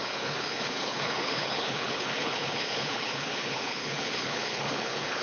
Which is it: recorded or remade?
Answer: remade